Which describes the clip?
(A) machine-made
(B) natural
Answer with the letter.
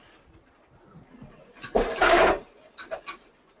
B